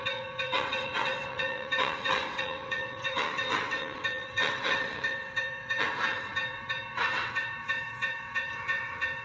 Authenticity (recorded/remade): remade